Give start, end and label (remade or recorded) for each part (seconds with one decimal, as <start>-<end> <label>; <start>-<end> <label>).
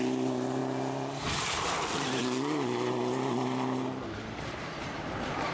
0.0-0.6 remade; 0.6-1.4 recorded; 1.4-2.2 remade; 2.2-4.3 recorded; 4.3-5.5 remade